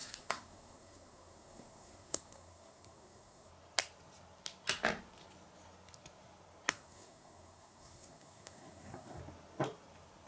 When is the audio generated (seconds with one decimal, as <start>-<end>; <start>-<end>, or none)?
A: 0.0-3.5; 6.7-9.2